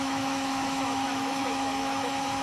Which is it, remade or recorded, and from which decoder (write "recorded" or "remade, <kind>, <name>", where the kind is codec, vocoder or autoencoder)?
remade, autoencoder, DAC-VAE